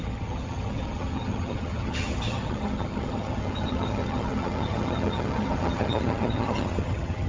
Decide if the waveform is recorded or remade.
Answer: remade